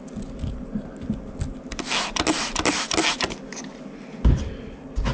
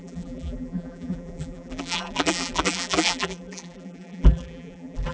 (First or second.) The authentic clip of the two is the first